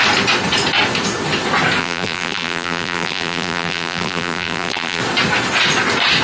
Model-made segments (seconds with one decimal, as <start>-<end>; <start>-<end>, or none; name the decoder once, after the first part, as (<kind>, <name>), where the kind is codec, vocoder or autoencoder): 1.8-5.0 (vocoder, BigVGAN v2)